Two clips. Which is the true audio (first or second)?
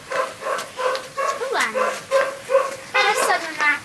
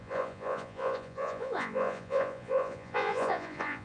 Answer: first